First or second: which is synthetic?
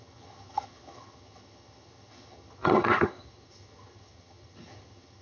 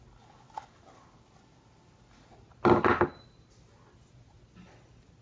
first